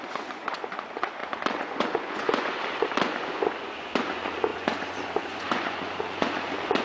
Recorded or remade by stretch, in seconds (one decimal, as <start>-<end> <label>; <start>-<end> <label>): 0.0-6.8 remade